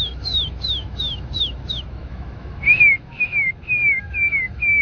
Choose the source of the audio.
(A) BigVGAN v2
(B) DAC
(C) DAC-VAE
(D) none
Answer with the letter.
C